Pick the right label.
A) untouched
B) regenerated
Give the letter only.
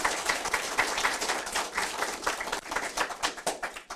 B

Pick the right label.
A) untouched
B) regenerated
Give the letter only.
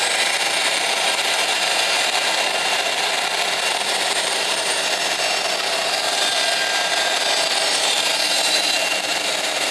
B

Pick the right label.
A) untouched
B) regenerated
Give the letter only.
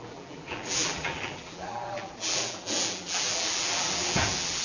B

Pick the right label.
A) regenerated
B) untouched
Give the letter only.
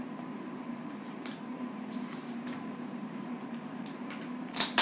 A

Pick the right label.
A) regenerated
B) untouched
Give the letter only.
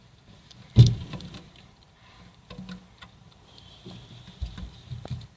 A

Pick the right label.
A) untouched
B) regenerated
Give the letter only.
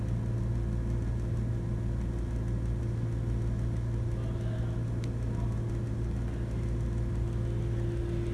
A